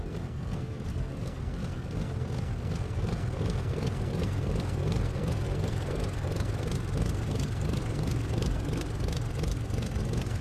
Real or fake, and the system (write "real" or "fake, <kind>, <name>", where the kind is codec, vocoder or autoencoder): fake, codec, SNAC